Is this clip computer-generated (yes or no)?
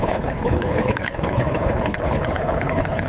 yes